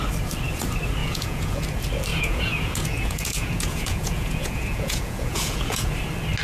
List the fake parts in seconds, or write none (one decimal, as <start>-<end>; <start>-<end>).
1.0-1.6; 2.1-5.9